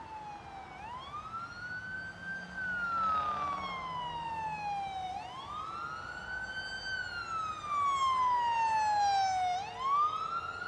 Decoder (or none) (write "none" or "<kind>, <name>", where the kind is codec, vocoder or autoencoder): none